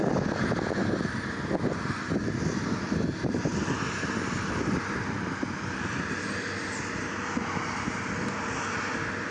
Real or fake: real